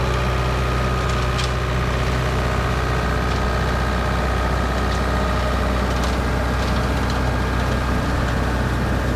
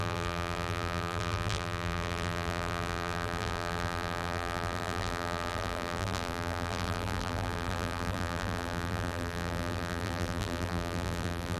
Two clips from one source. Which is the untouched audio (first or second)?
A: first